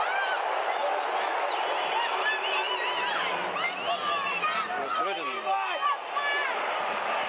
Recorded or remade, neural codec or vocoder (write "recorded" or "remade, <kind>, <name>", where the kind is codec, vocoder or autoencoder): recorded